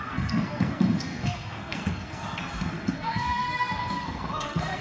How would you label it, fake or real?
fake